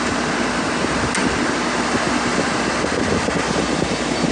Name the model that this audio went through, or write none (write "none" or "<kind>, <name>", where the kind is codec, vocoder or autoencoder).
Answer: none